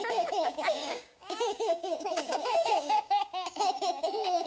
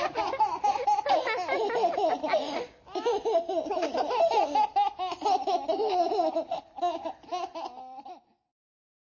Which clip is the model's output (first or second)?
first